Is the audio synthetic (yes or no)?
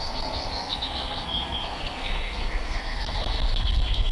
yes